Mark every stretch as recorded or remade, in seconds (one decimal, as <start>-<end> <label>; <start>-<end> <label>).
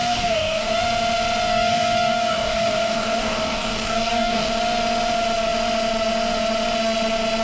0.0-0.8 remade; 0.8-1.5 recorded; 1.5-4.5 remade; 4.5-7.4 recorded